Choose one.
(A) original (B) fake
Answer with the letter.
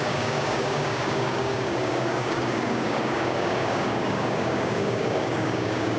B